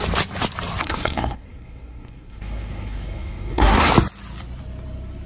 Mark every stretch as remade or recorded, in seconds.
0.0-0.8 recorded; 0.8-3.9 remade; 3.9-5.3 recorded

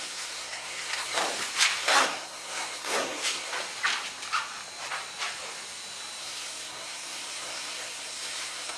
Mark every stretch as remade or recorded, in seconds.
0.0-1.2 remade; 1.2-1.8 recorded; 1.8-3.5 remade; 3.5-6.2 recorded; 6.2-8.8 remade

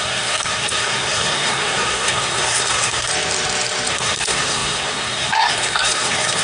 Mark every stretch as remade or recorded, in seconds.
0.0-3.1 remade; 3.1-3.9 recorded; 3.9-6.4 remade

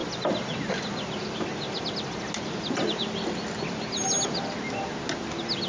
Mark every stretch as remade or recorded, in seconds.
0.0-5.7 recorded

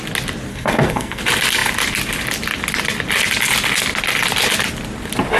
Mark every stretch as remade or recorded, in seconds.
0.0-0.5 recorded; 0.5-1.2 remade; 1.2-5.4 recorded

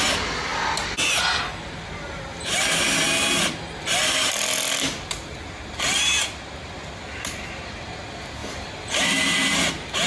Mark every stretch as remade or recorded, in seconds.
0.0-10.1 recorded

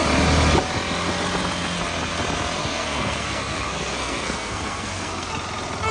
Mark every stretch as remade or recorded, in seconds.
0.0-2.6 recorded; 2.6-5.3 remade; 5.3-5.9 recorded